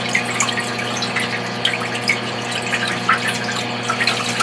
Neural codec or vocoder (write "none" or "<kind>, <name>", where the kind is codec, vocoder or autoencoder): none